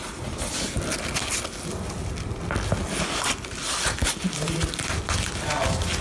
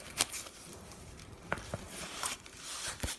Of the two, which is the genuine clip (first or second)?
first